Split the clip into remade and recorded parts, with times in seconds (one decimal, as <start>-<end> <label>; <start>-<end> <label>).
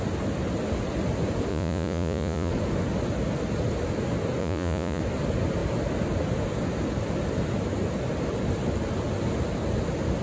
0.0-1.5 recorded; 1.5-2.5 remade; 2.5-4.4 recorded; 4.4-5.0 remade; 5.0-10.2 recorded